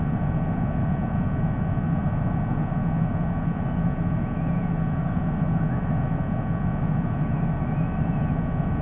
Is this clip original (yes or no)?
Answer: yes